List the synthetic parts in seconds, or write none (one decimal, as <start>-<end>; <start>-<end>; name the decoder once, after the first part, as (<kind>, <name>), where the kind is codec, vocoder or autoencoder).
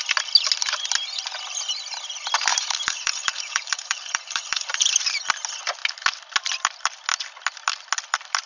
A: 2.5-5.3 (vocoder, BigVGAN v2)